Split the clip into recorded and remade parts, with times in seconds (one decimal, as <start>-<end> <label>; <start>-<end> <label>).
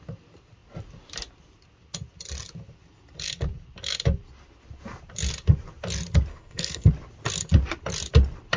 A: 0.0-6.3 recorded; 6.3-6.9 remade; 6.9-8.6 recorded